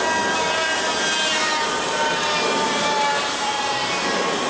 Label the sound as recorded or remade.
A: remade